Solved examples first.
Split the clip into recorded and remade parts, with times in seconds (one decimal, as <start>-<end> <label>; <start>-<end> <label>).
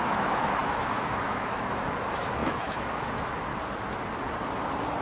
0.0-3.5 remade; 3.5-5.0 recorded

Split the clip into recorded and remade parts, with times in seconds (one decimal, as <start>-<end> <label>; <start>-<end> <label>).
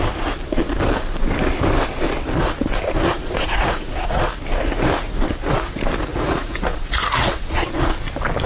0.0-3.1 recorded; 3.1-4.2 remade; 4.2-6.1 recorded; 6.1-7.9 remade; 7.9-8.5 recorded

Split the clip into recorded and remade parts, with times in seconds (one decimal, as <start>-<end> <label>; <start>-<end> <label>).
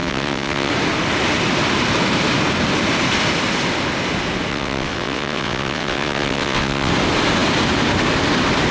0.0-0.7 remade; 0.7-4.5 recorded; 4.5-6.9 remade; 6.9-8.7 recorded